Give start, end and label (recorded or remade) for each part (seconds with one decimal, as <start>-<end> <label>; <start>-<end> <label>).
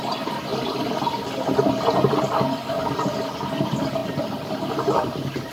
0.0-2.6 recorded; 2.6-3.1 remade; 3.1-4.0 recorded; 4.0-4.7 remade; 4.7-5.5 recorded